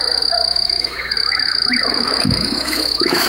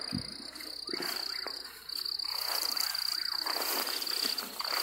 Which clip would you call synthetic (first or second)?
first